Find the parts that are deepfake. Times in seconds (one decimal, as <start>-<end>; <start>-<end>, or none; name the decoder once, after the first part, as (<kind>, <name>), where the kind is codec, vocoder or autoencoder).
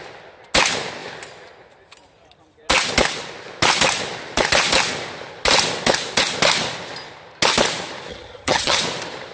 8.1-8.8 (vocoder, HiFi-GAN)